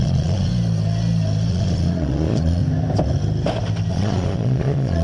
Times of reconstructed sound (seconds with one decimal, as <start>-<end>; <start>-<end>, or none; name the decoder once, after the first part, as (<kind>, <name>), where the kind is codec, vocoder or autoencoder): 0.0-0.5 (vocoder, Vocos); 1.5-2.6; 3.9-5.0